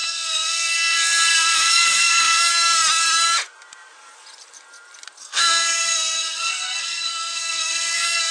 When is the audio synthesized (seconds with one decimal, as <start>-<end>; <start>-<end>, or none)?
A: 0.0-2.5; 5.2-8.3